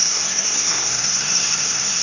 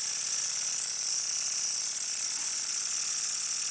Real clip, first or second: second